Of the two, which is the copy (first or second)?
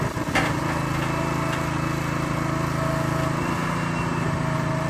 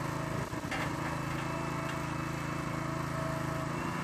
first